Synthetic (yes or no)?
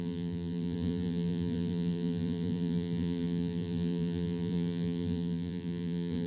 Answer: yes